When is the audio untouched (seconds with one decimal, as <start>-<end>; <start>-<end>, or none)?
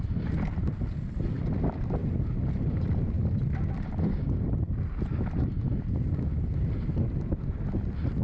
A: 0.0-8.2